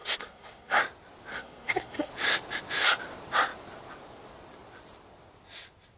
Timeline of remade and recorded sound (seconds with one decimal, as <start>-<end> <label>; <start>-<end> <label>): 0.0-0.8 remade; 0.8-1.3 recorded; 1.3-2.1 remade; 2.1-6.0 recorded